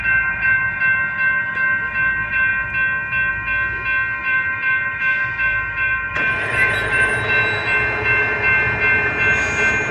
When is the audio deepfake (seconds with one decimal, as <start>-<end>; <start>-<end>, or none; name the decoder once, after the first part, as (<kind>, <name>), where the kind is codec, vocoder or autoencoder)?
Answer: 4.2-7.1 (vocoder, BigVGAN v2)